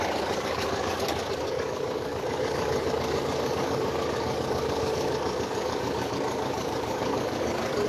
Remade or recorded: remade